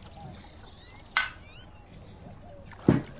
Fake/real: real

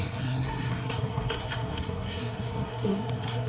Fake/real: fake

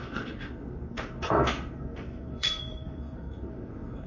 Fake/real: fake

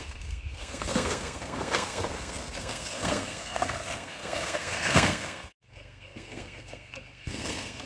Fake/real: fake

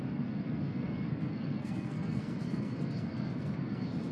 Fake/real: fake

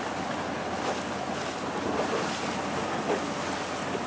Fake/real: real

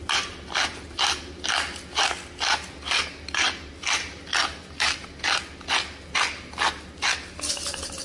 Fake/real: real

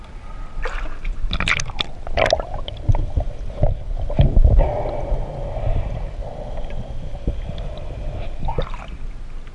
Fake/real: real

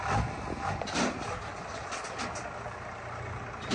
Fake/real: real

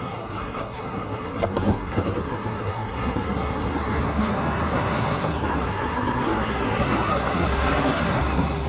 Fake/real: fake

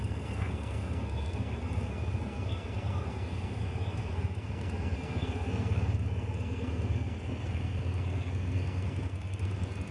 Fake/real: fake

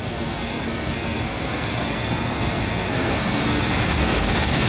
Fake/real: fake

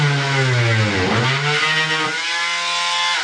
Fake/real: real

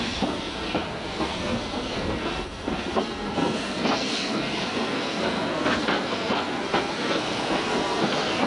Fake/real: fake